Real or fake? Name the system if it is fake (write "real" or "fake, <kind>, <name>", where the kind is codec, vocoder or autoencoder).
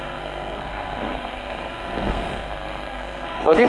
fake, codec, SNAC